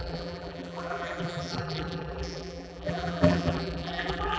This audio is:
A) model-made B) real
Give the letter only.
A